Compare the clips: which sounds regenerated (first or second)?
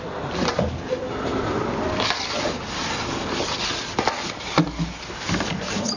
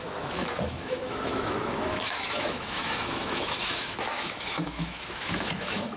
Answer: second